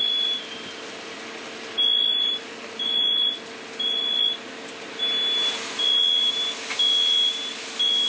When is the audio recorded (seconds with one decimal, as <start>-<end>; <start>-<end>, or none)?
0.0-2.1; 4.0-6.2; 6.7-8.1